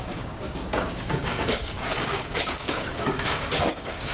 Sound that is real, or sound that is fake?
fake